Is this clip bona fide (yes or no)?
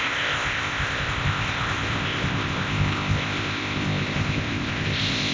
no